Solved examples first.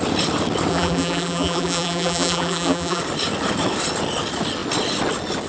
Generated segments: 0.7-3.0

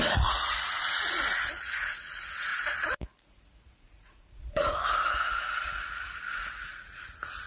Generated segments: 0.0-7.5

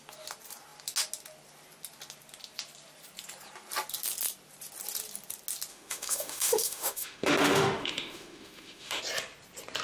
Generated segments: 5.7-9.0

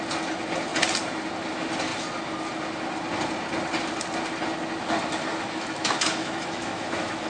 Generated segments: 5.3-7.3

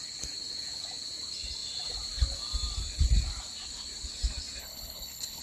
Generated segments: 4.6-5.4

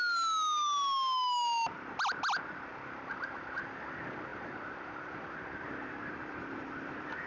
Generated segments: none